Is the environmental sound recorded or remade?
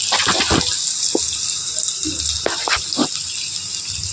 recorded